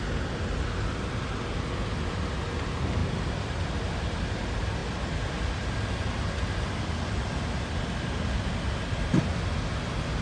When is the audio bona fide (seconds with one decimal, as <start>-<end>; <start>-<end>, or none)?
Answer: 0.0-3.0; 3.6-10.2